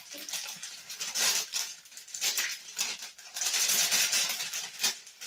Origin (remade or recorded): recorded